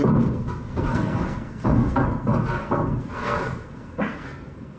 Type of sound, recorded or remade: remade